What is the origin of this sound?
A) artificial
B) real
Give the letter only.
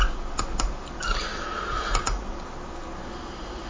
B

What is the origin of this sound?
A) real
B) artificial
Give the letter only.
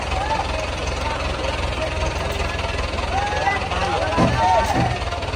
A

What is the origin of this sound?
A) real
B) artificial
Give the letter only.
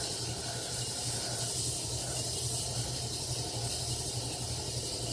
A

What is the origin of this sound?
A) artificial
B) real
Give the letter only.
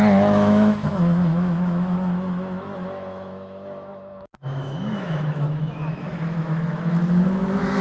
A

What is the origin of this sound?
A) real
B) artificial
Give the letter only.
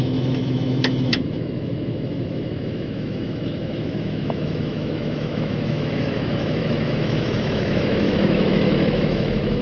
B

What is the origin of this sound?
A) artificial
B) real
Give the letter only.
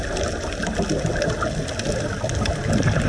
B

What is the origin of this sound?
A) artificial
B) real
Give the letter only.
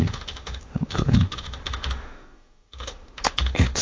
A